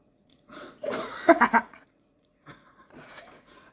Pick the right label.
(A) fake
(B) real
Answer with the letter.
A